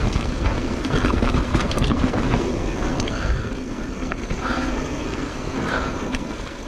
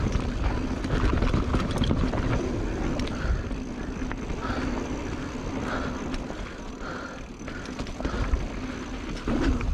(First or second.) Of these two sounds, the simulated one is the first